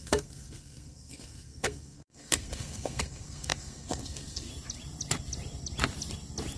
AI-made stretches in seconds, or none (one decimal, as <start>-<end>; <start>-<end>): 0.0-4.5

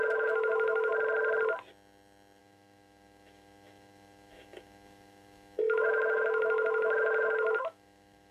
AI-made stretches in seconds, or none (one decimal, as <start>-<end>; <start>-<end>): 0.0-0.9; 2.4-8.3